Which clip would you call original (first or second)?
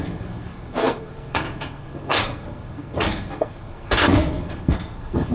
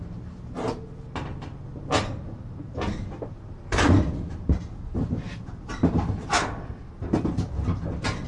second